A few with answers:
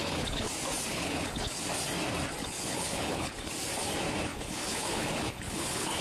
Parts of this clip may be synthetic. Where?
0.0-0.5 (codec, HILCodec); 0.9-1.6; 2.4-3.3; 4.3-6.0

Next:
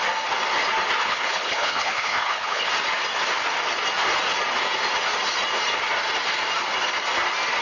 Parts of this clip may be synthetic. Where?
1.0-2.7 (codec, HILCodec)

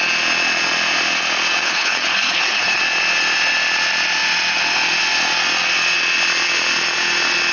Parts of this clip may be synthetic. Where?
1.6-2.8 (codec, HILCodec)